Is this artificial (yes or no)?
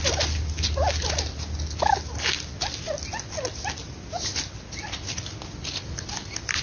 no